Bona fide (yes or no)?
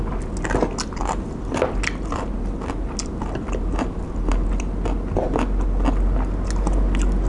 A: yes